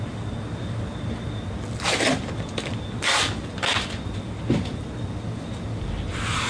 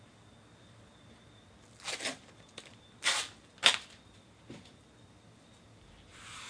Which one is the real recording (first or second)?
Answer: second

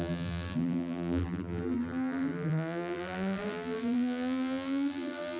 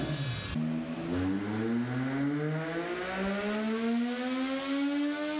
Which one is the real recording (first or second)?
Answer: second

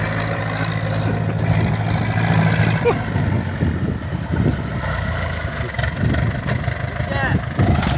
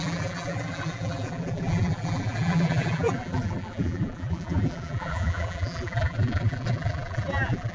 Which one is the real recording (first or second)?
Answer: first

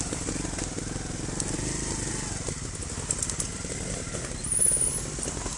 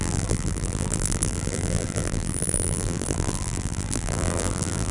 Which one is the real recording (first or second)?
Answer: first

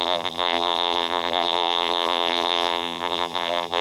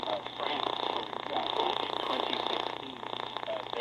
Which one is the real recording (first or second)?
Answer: second